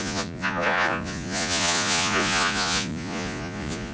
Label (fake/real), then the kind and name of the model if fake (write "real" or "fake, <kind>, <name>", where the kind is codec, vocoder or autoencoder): fake, vocoder, Vocos